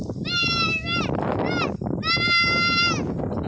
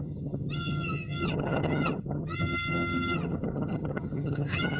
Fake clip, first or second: second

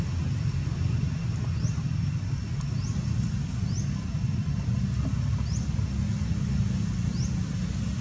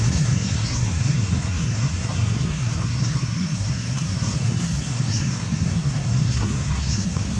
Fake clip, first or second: second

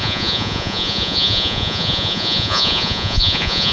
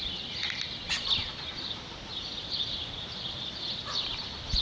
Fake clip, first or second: first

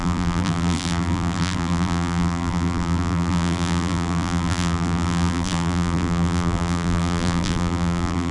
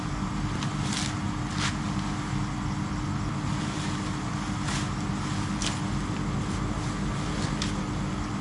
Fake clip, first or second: first